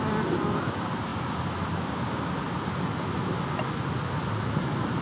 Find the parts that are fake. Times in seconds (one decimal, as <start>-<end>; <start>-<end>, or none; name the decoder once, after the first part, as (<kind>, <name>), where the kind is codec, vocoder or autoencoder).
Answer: none